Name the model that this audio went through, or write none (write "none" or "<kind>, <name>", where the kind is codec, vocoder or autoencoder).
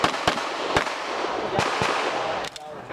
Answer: none